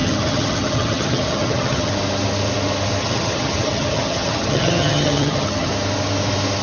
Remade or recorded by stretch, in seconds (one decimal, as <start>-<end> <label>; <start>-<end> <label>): 0.0-1.9 remade; 1.9-3.0 recorded; 3.0-5.7 remade; 5.7-6.6 recorded